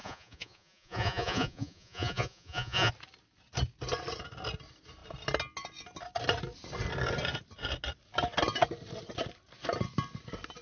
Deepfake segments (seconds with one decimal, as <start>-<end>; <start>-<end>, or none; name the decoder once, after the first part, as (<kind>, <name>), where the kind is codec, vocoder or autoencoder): 0.0-2.9 (vocoder, Vocos)